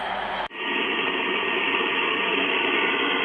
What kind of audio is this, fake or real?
fake